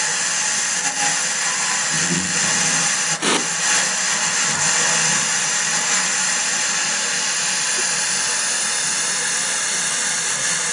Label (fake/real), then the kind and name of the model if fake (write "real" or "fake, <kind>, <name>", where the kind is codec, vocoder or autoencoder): real